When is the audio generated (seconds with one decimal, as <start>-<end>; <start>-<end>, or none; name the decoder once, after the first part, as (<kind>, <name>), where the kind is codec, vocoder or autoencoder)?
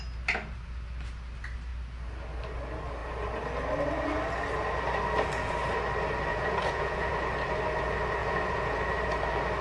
6.3-7.1 (vocoder, Vocos); 8.2-8.8